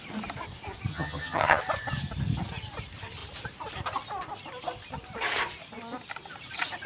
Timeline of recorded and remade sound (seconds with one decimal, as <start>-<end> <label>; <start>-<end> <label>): 0.0-0.9 recorded; 0.9-1.6 remade; 1.6-6.9 recorded

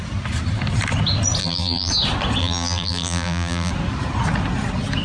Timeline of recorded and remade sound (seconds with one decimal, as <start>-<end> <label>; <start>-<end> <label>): 0.0-1.4 recorded; 1.4-1.9 remade; 1.9-2.4 recorded; 2.4-3.7 remade; 3.7-5.0 recorded

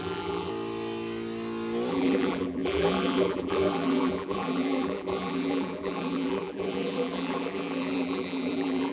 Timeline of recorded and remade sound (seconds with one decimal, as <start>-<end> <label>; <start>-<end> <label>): 0.0-0.5 remade; 0.5-1.9 recorded; 1.9-8.9 remade

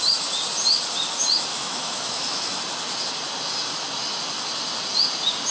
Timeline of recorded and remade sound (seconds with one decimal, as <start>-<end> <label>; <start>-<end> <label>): 0.0-1.5 recorded; 1.5-2.6 remade; 2.6-5.5 recorded